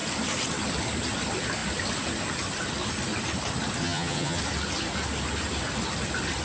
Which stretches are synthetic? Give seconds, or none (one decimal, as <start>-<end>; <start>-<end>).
3.8-4.4